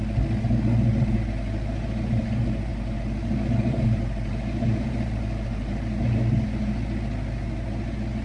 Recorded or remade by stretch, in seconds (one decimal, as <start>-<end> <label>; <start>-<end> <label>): 0.0-8.2 recorded